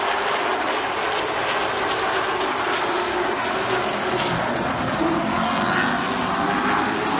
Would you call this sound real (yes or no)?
yes